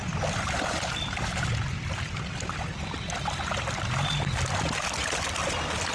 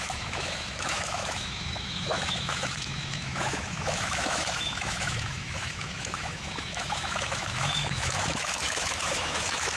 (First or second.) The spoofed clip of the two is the second